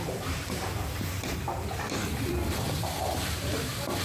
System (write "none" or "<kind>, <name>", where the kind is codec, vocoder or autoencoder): vocoder, BigVGAN v2